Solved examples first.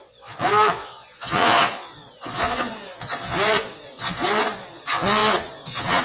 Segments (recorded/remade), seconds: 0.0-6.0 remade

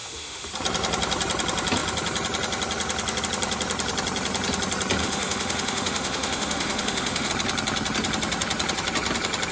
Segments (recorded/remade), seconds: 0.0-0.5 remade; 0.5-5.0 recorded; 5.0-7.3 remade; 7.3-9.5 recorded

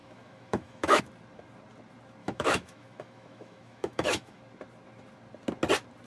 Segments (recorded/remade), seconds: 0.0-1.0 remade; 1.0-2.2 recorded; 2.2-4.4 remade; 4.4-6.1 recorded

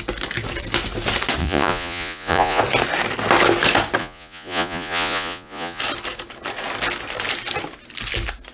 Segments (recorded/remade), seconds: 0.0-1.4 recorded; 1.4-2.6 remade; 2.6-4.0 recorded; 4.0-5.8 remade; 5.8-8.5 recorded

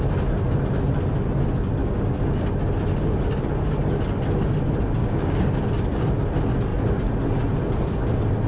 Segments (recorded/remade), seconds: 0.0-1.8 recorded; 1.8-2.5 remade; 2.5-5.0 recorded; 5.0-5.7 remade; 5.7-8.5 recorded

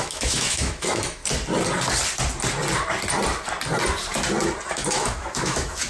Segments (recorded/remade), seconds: 0.0-1.2 remade; 1.2-4.7 recorded; 4.7-5.9 remade